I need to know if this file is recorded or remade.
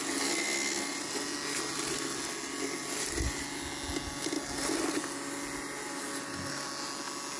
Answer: recorded